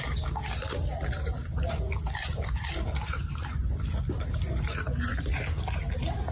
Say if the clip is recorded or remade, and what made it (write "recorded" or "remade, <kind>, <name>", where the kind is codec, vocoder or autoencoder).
recorded